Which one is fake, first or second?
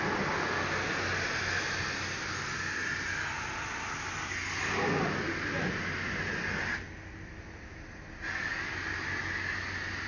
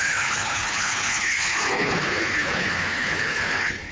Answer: second